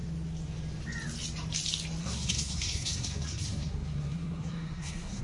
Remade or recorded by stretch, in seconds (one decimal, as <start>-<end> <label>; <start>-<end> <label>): 0.0-2.0 recorded; 2.0-5.2 remade